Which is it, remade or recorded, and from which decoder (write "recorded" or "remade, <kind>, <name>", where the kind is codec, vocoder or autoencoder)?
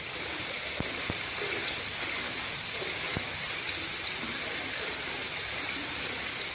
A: recorded